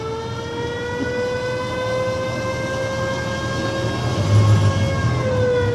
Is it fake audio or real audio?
real